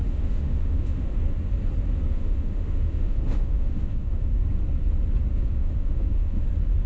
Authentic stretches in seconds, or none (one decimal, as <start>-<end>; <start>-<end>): 1.2-2.1; 4.4-5.3; 6.4-6.9